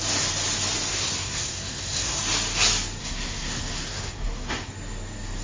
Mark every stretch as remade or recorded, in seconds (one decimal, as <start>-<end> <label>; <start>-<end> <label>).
0.0-0.9 recorded; 0.9-2.2 remade; 2.2-3.0 recorded; 3.0-4.7 remade; 4.7-5.4 recorded